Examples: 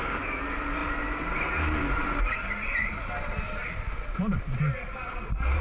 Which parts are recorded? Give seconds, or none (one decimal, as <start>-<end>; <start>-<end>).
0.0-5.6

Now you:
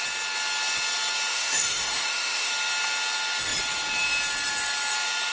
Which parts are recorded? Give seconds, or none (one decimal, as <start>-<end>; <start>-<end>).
0.0-1.3; 2.5-5.3

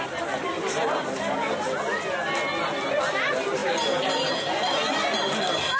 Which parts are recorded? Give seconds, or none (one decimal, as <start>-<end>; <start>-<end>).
0.0-5.8